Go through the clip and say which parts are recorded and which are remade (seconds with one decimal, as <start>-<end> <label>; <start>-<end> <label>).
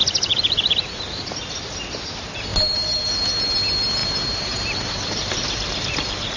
0.0-0.7 remade; 0.7-2.5 recorded; 2.5-3.3 remade; 3.3-4.0 recorded; 4.0-5.4 remade; 5.4-6.4 recorded